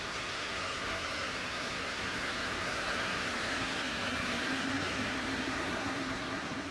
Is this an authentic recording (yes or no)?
no